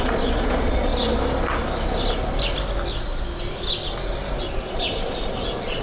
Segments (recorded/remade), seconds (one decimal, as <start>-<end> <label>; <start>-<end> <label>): 0.0-0.9 remade; 0.9-4.4 recorded; 4.4-5.8 remade